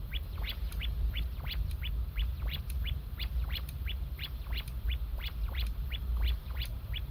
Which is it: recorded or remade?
remade